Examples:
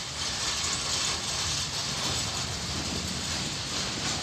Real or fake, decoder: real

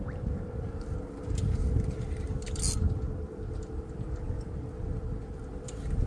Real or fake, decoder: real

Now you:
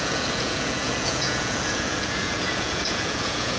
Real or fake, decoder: fake, vocoder, Vocos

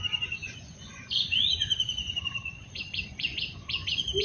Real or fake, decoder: fake, vocoder, Vocos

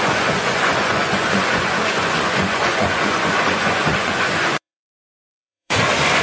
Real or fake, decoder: fake, vocoder, Vocos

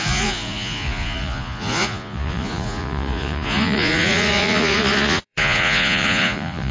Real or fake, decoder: fake, vocoder, Vocos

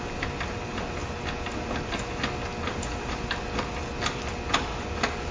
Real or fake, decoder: real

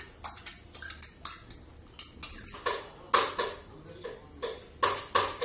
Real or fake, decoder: real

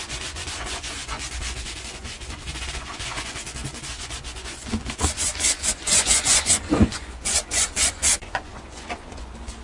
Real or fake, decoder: fake, vocoder, Vocos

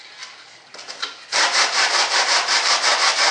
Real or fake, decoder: real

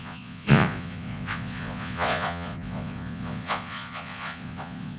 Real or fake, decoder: fake, vocoder, Vocos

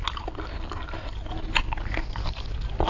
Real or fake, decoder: real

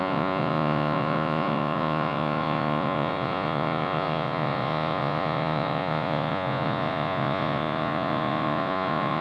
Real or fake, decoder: fake, vocoder, Vocos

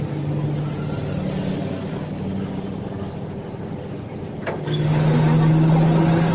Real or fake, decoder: real